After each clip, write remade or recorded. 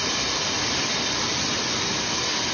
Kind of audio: recorded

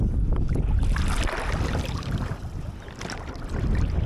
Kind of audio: recorded